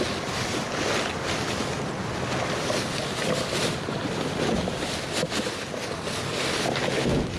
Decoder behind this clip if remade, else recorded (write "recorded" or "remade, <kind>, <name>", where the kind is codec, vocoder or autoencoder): recorded